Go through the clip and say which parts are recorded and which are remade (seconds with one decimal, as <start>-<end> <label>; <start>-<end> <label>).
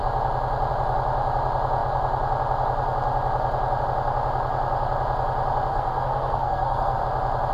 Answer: 0.0-5.7 recorded; 5.7-7.0 remade; 7.0-7.5 recorded